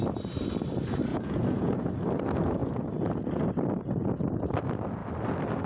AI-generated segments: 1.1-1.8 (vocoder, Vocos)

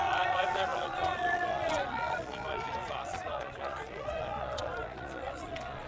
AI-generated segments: 0.0-5.9 (vocoder, Vocos)

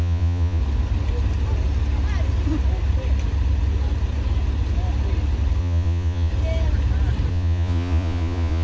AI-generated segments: 0.0-0.6 (vocoder, Vocos); 5.6-6.3; 7.3-8.6

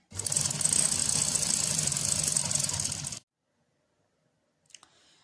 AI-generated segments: none

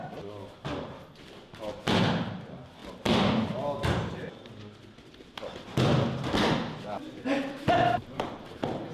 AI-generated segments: none

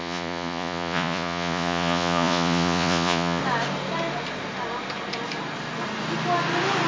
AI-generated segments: 0.0-3.4 (vocoder, Vocos)